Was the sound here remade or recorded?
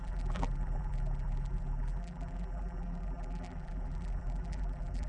remade